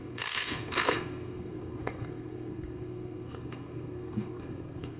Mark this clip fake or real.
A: fake